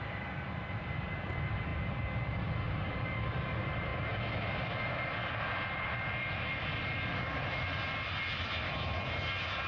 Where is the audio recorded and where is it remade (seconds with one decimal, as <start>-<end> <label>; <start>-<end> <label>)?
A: 0.0-9.7 remade